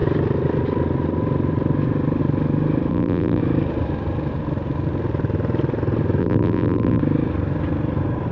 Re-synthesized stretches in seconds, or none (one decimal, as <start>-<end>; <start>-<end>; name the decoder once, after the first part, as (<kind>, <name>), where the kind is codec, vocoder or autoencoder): 2.9-3.4 (vocoder, BigVGAN v2); 6.2-7.0